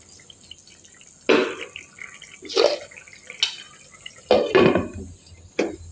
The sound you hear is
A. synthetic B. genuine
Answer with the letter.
B